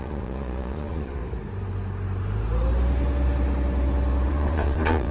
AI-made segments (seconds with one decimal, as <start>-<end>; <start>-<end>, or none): 0.0-1.2; 4.3-5.1